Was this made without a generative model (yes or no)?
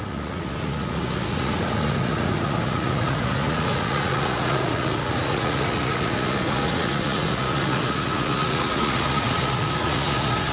no